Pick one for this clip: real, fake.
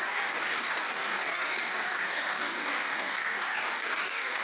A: fake